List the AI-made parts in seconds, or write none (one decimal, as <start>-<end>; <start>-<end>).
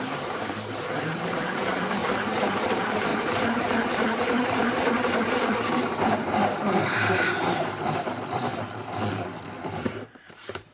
0.0-2.0; 2.6-8.5; 9.8-10.7